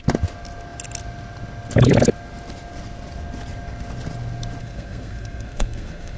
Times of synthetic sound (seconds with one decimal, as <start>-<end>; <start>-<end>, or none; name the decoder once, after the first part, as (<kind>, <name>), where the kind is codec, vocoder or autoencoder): 4.6-6.2 (codec, SNAC)